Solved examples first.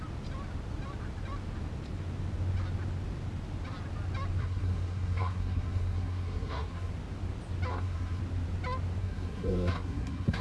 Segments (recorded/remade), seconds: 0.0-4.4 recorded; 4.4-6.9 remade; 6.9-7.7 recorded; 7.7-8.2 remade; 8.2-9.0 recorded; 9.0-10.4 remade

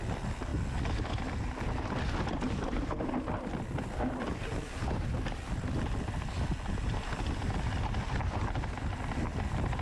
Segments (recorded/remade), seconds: 0.0-9.8 recorded

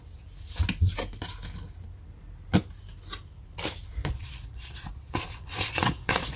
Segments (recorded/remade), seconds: 0.0-4.0 recorded; 4.0-6.4 remade

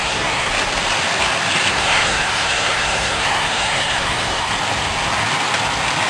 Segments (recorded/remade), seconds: 0.0-0.5 remade; 0.5-1.7 recorded; 1.7-4.5 remade; 4.5-6.1 recorded

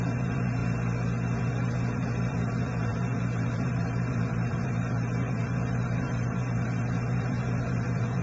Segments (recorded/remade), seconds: 0.0-0.6 remade; 0.6-1.4 recorded; 1.4-8.2 remade